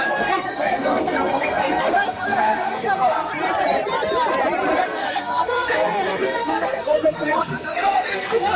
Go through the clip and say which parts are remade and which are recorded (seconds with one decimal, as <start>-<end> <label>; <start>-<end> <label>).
0.0-3.3 remade; 3.3-4.8 recorded; 4.8-8.6 remade